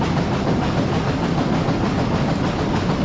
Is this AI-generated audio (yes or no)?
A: no